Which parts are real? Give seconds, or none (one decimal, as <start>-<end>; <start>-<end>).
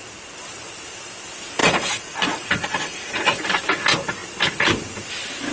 0.0-1.6; 3.4-5.5